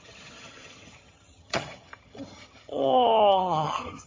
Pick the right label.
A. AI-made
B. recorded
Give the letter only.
A